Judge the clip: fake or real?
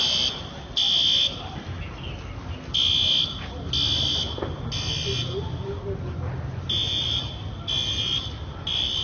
real